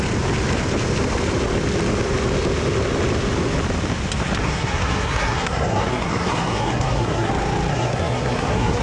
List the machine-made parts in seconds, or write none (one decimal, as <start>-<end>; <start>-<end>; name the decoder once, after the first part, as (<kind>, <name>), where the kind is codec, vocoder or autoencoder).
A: 4.4-7.3 (codec, SNAC); 7.7-8.8